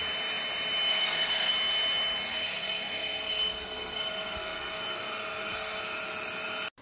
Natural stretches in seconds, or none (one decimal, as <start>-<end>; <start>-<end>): 0.0-0.9; 1.5-2.3; 5.8-6.8